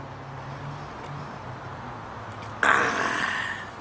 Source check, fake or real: real